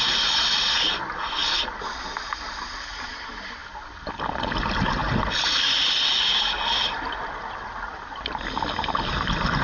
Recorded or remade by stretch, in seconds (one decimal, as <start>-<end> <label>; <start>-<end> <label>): 0.0-9.6 recorded